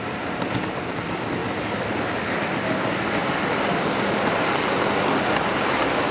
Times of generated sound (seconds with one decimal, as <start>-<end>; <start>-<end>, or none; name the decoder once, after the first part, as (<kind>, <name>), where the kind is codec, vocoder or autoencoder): 1.4-2.2 (vocoder, BigVGAN v2); 3.2-5.0